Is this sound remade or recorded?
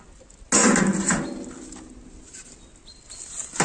recorded